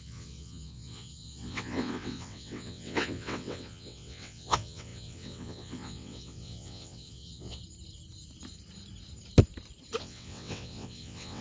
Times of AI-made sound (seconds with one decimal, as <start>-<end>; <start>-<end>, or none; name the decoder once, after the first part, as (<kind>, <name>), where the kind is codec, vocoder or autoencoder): 0.0-7.6 (vocoder, WaveNeXt); 10.0-11.4

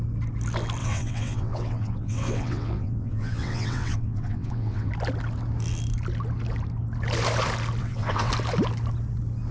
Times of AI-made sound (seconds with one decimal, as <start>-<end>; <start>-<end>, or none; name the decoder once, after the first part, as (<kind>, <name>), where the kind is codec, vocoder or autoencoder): 0.8-4.9 (vocoder, WaveNeXt); 7.8-8.3

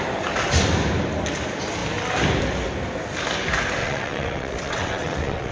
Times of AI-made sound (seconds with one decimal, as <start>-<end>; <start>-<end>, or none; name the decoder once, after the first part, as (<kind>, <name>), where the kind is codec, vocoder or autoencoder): 3.8-5.5 (vocoder, WaveNeXt)

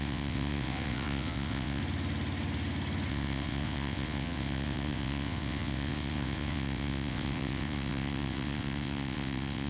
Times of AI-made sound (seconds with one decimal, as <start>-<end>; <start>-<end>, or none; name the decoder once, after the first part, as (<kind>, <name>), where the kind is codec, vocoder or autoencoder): 0.0-1.8 (vocoder, WaveNeXt); 3.1-9.7

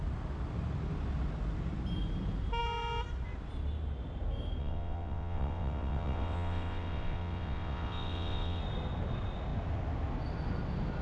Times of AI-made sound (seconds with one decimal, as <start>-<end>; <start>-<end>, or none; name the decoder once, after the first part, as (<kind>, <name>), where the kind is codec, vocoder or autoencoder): 4.6-8.6 (vocoder, WaveNeXt)

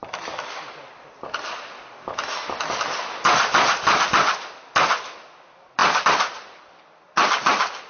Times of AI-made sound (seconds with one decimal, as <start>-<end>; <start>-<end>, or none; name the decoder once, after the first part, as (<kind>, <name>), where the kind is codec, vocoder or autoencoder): none